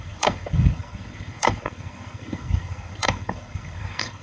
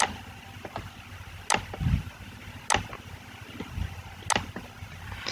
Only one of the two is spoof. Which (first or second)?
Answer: first